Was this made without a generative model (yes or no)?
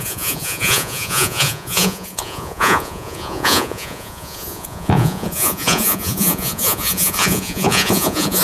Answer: no